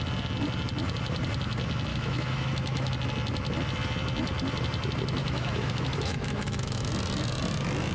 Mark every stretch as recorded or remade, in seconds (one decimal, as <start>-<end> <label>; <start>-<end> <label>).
0.0-1.9 recorded; 1.9-2.9 remade; 2.9-5.2 recorded; 5.2-6.9 remade; 6.9-7.9 recorded

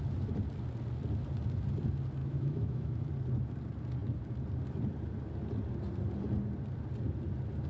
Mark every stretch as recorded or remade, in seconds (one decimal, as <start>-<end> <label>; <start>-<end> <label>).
0.0-2.2 recorded; 2.2-3.0 remade; 3.0-7.7 recorded

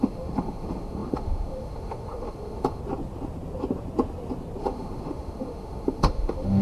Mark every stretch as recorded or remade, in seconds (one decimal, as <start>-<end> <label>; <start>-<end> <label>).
0.0-2.8 remade; 2.8-4.6 recorded; 4.6-6.6 remade